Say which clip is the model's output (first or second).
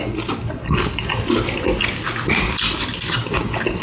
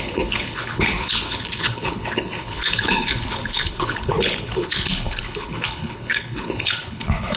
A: second